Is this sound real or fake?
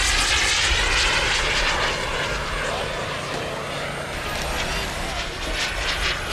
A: real